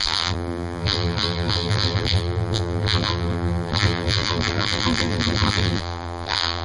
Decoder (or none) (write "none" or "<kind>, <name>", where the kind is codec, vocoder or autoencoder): vocoder, BigVGAN v2